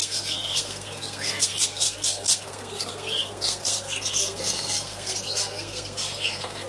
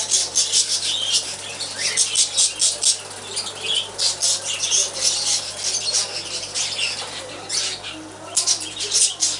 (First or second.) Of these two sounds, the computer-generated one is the first